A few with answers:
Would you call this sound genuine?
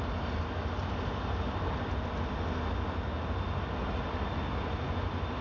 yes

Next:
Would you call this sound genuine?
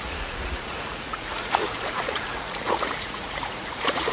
no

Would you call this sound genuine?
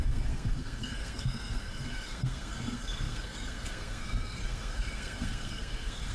no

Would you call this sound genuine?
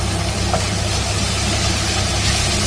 yes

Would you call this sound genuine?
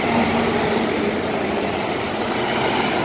yes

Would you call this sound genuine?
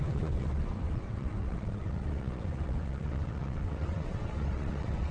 no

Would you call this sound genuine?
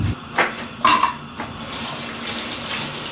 yes